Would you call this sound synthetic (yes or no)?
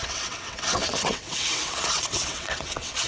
yes